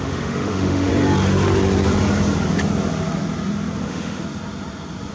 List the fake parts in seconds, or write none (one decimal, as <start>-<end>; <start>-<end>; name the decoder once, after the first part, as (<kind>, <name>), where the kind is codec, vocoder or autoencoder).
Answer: 0.0-0.9 (autoencoder, DAC-VAE); 3.8-4.2